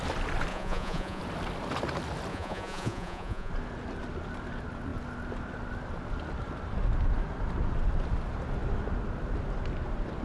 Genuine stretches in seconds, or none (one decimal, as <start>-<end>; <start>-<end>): 0.0-0.5; 1.2-2.3; 3.5-10.2